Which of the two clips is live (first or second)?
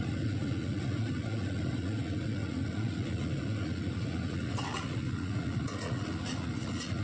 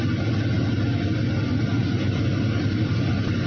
second